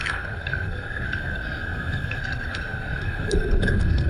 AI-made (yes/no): yes